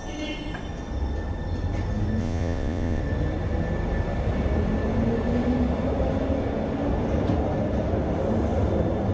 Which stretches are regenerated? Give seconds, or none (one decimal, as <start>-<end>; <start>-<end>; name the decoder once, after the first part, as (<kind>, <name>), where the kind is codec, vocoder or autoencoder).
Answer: 2.2-3.0 (vocoder, Vocos)